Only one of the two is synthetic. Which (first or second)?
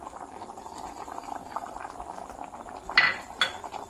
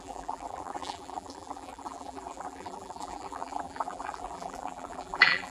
second